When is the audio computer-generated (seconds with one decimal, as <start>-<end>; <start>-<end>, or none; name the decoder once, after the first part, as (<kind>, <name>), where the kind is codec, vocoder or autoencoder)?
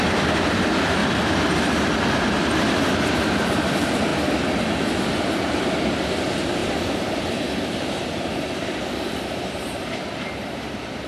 6.6-10.4 (vocoder, BigVGAN v2)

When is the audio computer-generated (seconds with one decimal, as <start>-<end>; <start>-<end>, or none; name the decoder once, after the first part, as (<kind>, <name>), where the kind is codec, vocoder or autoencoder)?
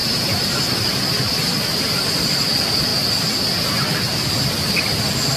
none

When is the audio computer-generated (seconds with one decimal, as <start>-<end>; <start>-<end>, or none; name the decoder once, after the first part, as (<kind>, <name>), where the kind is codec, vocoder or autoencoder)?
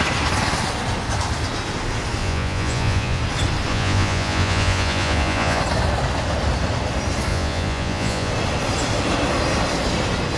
2.2-3.2 (vocoder, Vocos); 3.7-5.6; 7.3-8.3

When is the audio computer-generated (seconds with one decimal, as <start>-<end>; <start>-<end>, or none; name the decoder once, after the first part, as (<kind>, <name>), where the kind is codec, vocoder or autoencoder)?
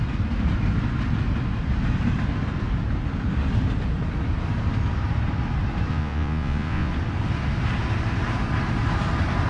5.9-6.9 (vocoder, Vocos)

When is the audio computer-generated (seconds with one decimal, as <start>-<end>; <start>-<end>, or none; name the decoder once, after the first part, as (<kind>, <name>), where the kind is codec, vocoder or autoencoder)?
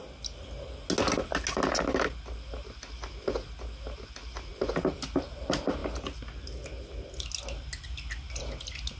none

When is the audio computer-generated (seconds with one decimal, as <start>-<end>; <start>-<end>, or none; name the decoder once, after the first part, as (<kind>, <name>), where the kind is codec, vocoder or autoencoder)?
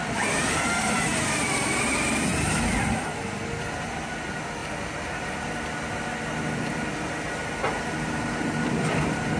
none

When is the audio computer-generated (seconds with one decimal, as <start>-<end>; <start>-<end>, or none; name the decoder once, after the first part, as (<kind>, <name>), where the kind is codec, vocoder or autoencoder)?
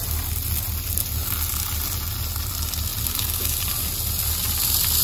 none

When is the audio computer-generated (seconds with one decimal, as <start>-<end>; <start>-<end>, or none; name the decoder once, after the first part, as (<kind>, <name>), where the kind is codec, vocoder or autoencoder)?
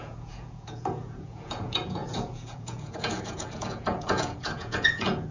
0.0-5.3 (vocoder, Vocos)